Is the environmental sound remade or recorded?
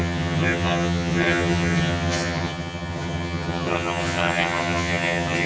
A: remade